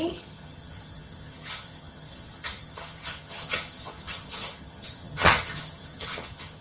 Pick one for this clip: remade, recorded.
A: remade